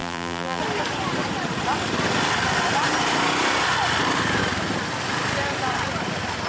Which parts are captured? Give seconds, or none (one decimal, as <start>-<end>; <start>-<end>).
0.6-6.5